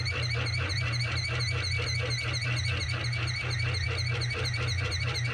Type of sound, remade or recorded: recorded